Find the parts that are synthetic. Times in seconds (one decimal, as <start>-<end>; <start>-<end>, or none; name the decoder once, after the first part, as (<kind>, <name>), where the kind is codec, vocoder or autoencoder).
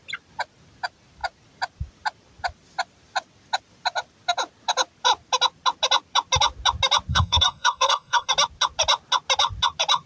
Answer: 7.1-8.3 (codec, SNAC)